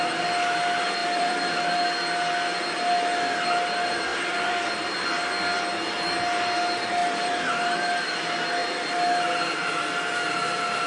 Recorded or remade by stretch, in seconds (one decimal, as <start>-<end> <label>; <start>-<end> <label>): 0.0-1.0 recorded; 1.0-1.6 remade; 1.6-4.1 recorded; 4.1-5.2 remade; 5.2-7.0 recorded; 7.0-7.5 remade; 7.5-10.9 recorded